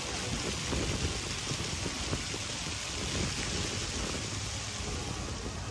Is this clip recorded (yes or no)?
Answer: yes